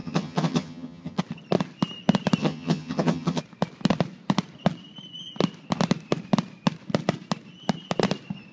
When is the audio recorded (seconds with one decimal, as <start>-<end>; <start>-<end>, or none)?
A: 1.2-2.4; 3.4-8.5